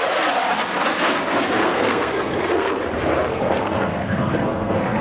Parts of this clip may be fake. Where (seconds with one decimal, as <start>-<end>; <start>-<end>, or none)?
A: 1.6-2.8; 3.3-5.0

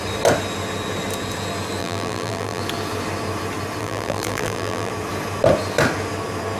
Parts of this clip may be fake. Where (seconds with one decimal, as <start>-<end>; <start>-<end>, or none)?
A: 1.8-2.6; 3.8-4.9

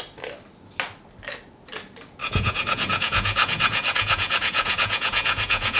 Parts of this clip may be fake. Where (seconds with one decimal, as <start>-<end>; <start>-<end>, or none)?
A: 2.2-5.8

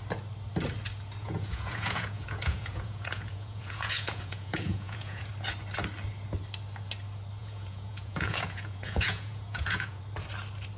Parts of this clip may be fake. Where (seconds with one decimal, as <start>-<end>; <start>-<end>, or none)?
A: 1.2-5.3; 7.4-10.0

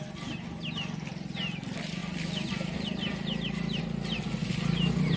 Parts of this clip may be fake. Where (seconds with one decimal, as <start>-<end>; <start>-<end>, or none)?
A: 2.0-3.8

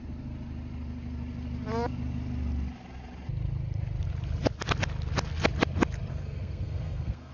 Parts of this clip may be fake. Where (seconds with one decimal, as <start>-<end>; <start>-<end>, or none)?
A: 6.1-7.3